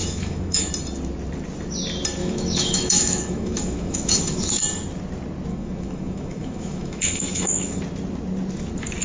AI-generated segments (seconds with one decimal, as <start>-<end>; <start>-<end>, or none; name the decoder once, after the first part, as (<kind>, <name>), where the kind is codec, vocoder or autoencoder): 0.0-0.7 (autoencoder, DAC-VAE); 2.2-4.6; 5.5-7.8